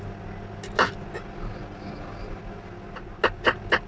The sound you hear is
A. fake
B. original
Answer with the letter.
B